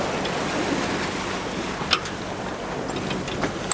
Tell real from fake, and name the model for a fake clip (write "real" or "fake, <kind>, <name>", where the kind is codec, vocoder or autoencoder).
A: real